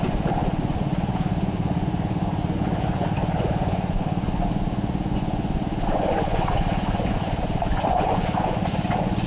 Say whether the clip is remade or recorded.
remade